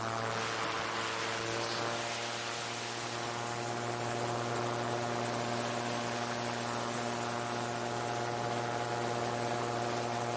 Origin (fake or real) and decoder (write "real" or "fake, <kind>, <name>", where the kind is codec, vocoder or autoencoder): real